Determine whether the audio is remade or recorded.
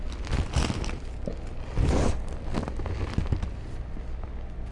recorded